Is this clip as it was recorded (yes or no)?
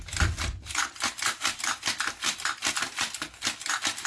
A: yes